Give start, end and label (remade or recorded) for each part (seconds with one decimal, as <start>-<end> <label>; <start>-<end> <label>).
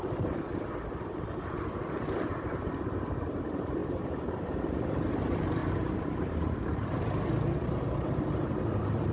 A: 0.0-3.8 remade; 3.8-5.1 recorded; 5.1-9.1 remade